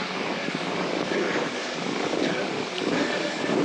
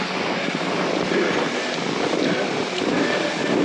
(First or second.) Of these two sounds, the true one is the second